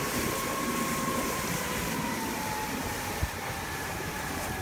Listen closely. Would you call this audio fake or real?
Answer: fake